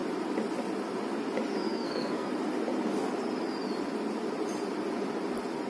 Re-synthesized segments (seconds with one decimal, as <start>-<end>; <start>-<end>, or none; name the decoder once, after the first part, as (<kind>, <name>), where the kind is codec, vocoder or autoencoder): 1.5-2.3 (codec, SNAC)